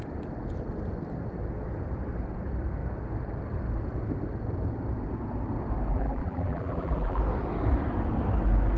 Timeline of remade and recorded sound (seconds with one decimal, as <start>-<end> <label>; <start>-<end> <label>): 0.0-5.9 recorded; 5.9-7.2 remade; 7.2-8.8 recorded